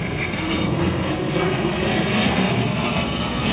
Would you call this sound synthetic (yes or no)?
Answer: yes